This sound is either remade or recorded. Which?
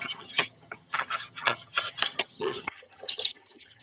remade